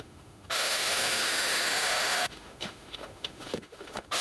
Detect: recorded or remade remade